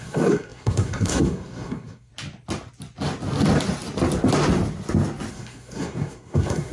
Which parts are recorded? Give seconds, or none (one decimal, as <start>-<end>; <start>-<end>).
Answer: 2.1-5.3